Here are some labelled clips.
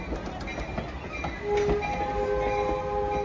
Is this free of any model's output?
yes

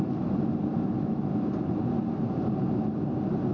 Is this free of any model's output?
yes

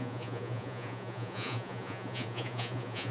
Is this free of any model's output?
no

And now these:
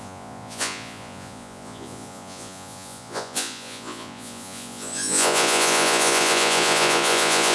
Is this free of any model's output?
no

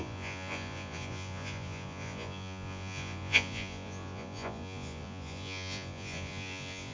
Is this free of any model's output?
no